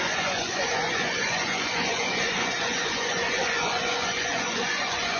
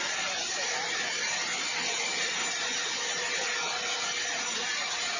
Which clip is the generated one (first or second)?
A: first